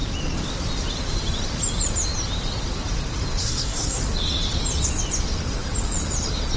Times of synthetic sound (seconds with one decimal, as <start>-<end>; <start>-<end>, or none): 3.4-4.0